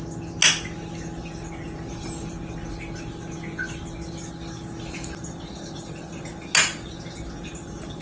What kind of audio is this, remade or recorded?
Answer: recorded